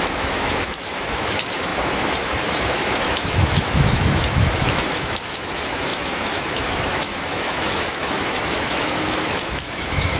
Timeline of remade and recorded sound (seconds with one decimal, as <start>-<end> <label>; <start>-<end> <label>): 0.0-10.2 remade